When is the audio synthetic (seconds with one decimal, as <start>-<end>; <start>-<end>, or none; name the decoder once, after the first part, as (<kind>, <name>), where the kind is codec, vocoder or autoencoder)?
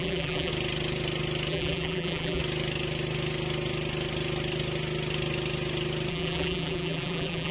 0.0-0.5 (vocoder, BigVGAN v2); 1.5-2.4; 6.1-7.5